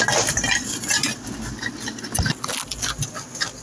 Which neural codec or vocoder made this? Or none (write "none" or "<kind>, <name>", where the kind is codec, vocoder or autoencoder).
none